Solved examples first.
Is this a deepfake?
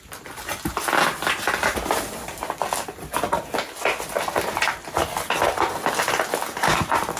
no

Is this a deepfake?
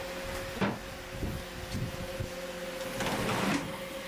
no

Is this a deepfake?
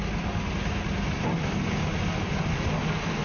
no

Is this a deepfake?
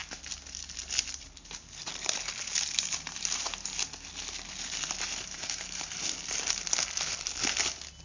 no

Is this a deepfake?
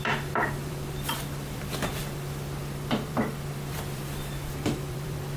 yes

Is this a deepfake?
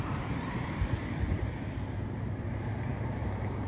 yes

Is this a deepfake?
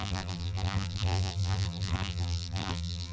yes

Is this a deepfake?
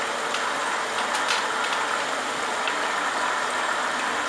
no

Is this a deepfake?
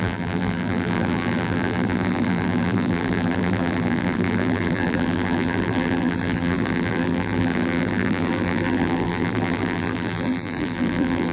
yes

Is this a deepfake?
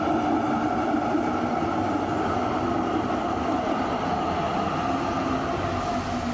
no